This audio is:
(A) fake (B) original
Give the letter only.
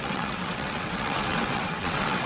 A